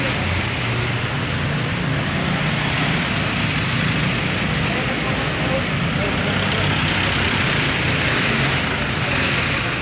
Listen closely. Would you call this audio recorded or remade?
recorded